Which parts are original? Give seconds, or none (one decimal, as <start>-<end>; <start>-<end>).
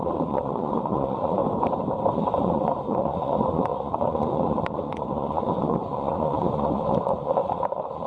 1.4-2.1